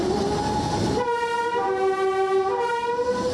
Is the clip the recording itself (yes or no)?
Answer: yes